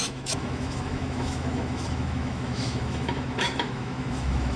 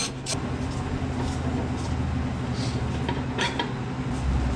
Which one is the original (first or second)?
second